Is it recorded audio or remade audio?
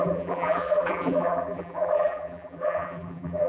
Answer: remade